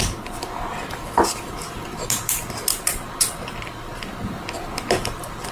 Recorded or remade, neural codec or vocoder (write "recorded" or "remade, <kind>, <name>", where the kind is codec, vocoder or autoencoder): recorded